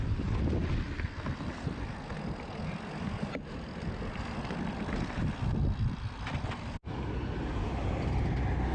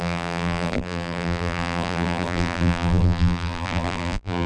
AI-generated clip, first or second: second